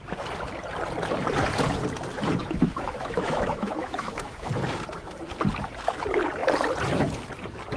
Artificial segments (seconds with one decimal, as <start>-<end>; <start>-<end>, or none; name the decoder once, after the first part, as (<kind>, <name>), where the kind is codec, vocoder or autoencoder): 2.4-4.5 (autoencoder, DAC-VAE)